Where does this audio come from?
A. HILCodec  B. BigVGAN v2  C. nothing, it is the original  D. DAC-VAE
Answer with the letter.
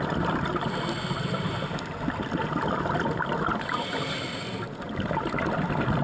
C